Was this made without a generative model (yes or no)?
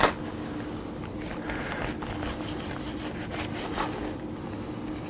yes